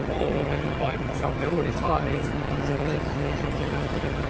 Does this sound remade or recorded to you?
remade